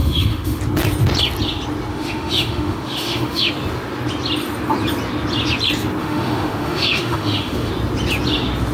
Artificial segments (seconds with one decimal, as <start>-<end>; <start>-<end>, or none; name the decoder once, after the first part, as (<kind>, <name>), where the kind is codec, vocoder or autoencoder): 0.0-0.6 (autoencoder, DAC-VAE); 1.9-3.5; 6.0-7.7